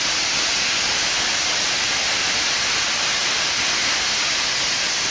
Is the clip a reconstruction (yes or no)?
no